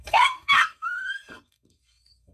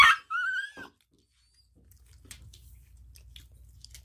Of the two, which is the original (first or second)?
second